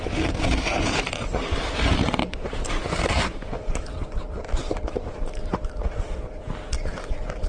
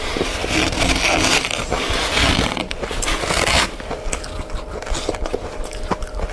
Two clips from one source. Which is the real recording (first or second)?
second